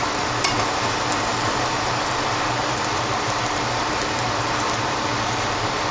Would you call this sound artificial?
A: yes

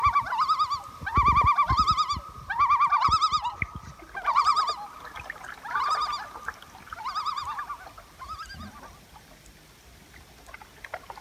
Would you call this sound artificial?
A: no